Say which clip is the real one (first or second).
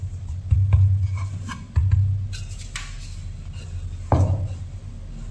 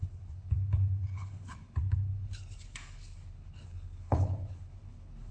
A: first